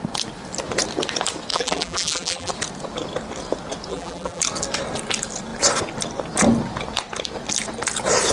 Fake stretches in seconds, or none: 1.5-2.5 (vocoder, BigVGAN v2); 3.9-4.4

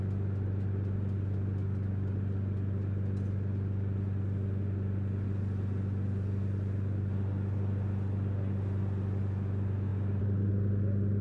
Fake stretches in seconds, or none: 9.9-10.5 (vocoder, BigVGAN v2)

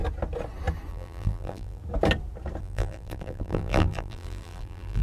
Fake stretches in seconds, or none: 0.9-1.8 (vocoder, BigVGAN v2); 2.6-5.0

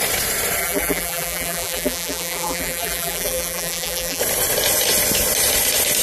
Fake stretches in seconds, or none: 0.6-4.2 (vocoder, BigVGAN v2)

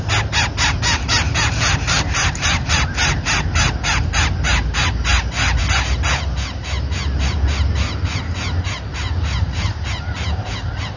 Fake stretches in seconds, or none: none